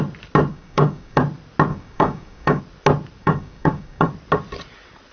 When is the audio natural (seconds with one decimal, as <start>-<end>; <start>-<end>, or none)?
0.0-0.5; 1.2-1.7; 2.6-3.2; 4.1-5.1